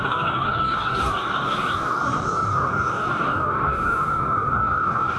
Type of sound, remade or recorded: remade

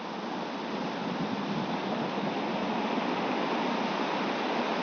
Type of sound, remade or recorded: recorded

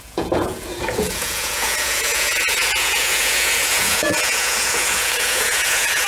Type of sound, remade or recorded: remade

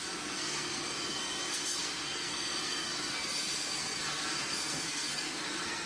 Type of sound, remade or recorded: remade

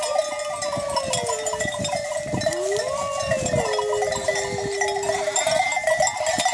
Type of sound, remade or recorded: recorded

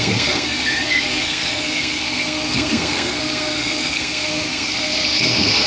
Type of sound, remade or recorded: remade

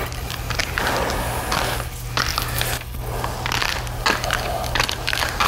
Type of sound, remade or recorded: recorded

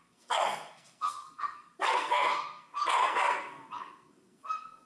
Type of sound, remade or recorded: remade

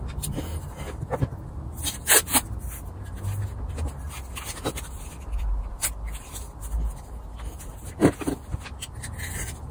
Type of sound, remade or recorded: recorded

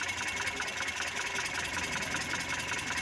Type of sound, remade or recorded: remade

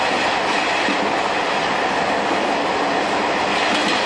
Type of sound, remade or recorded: recorded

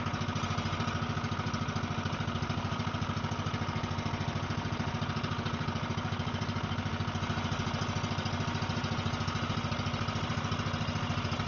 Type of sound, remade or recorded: recorded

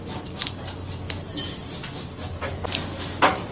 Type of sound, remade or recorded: recorded